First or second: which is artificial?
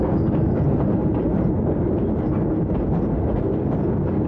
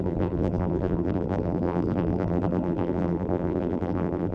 second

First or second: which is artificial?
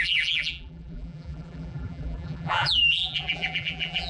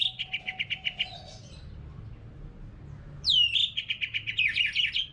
first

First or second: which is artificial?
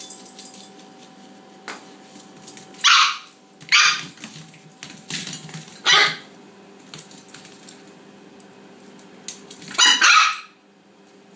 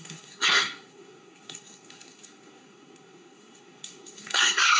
second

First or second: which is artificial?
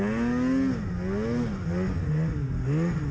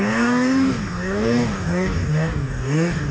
second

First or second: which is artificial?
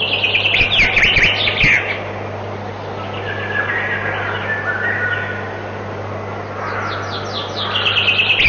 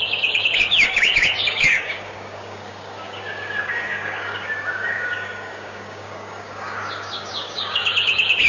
second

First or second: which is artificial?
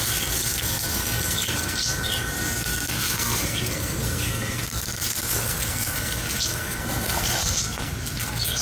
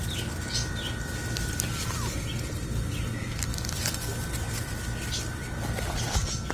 first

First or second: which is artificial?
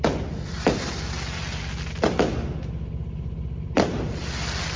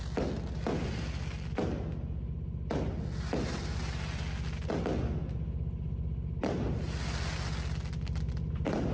first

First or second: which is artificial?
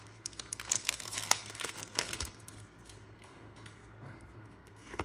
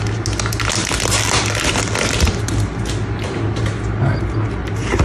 first